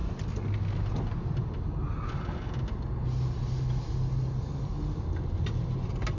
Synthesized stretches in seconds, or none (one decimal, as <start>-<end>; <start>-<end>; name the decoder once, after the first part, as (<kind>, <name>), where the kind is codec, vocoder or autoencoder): none